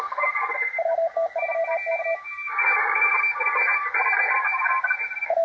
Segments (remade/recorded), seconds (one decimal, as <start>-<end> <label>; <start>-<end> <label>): 0.0-2.5 recorded; 2.5-3.1 remade; 3.1-5.4 recorded